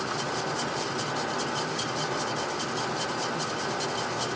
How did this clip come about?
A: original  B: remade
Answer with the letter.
A